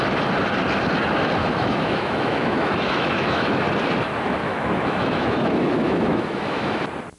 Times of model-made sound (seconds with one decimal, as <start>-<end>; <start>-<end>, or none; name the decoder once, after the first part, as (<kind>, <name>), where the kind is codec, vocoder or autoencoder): 1.4-3.5 (autoencoder, DAC-VAE); 4.4-6.8